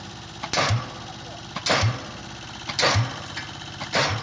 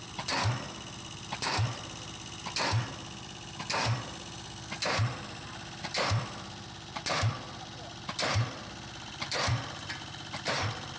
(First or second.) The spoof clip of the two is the second